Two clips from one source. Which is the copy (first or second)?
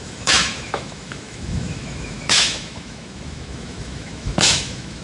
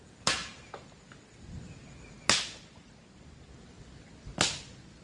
first